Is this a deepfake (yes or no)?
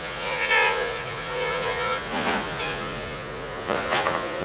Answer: yes